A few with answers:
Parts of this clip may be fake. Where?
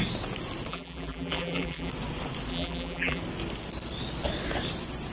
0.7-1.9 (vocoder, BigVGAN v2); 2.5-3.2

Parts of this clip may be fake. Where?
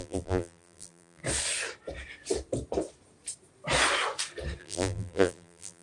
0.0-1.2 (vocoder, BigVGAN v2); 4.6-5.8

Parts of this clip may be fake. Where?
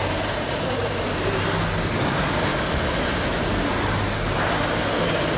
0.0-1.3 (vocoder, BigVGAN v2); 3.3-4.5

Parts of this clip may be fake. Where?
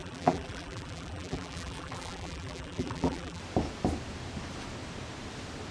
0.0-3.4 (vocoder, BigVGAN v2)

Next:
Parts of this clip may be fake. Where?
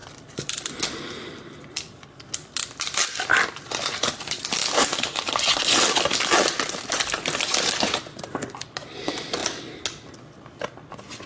0.0-4.6 (vocoder, BigVGAN v2); 7.0-9.4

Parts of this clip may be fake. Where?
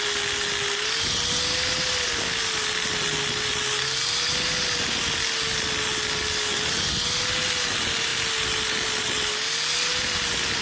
none